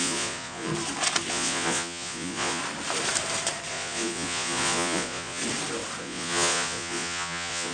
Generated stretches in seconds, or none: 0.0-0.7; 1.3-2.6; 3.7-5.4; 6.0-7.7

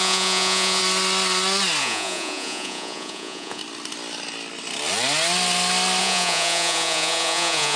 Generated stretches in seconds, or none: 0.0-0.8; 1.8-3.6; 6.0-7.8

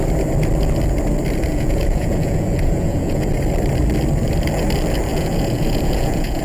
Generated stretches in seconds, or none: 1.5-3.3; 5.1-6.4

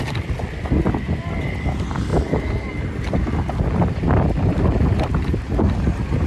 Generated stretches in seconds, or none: none

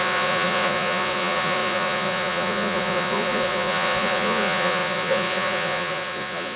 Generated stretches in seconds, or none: 0.0-6.6

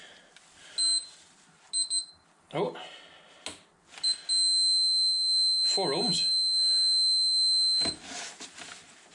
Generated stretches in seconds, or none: none

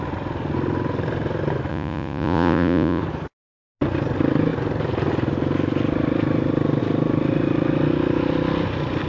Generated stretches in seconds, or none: 1.7-3.0